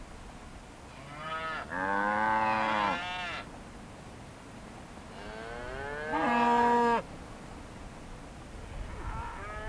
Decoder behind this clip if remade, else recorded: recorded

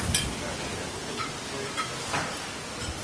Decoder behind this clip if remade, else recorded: recorded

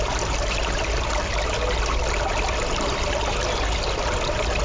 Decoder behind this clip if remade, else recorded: recorded